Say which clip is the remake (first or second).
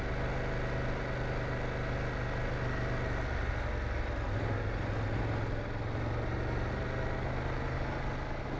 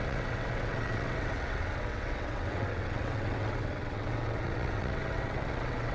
second